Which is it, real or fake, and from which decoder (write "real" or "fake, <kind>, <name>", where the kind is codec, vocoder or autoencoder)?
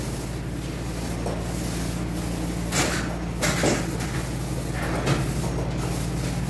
real